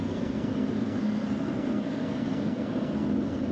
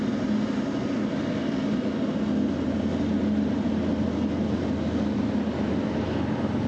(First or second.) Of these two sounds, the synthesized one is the first